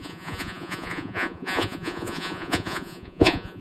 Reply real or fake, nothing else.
fake